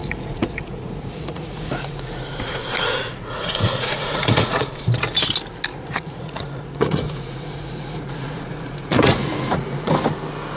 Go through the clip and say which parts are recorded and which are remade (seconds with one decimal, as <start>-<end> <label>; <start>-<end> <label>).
0.0-4.8 remade; 4.8-5.7 recorded; 5.7-9.9 remade; 9.9-10.6 recorded